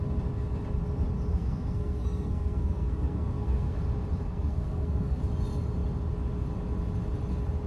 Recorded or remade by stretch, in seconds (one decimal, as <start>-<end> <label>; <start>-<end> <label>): 0.0-1.3 recorded; 1.3-3.8 remade; 3.8-4.2 recorded; 4.2-5.2 remade; 5.2-7.7 recorded